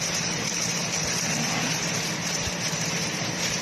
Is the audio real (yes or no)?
no